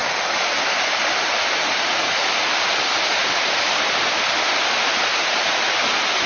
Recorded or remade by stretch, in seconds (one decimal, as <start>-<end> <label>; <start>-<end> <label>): 0.0-3.3 remade; 3.3-5.1 recorded; 5.1-5.7 remade; 5.7-6.3 recorded